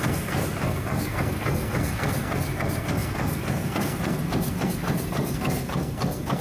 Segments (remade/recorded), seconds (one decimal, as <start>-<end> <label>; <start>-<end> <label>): 0.0-6.4 remade